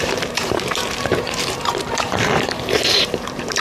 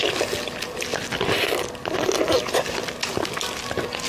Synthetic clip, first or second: first